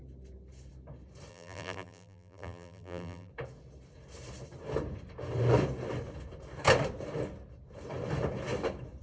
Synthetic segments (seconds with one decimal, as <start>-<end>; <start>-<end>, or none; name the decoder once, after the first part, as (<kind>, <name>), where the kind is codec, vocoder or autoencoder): 1.3-3.3 (vocoder, BigVGAN v2)